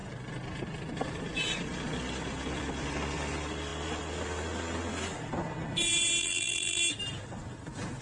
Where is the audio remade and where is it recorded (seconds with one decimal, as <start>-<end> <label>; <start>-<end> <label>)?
0.0-6.2 recorded; 6.2-6.8 remade; 6.8-8.0 recorded